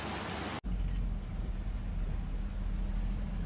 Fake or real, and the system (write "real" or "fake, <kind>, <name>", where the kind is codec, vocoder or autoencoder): real